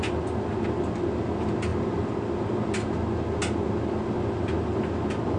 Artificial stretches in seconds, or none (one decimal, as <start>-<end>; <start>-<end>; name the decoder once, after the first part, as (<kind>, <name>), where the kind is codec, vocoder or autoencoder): none